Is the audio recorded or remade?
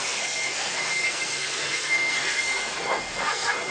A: remade